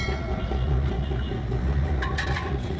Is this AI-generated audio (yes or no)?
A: yes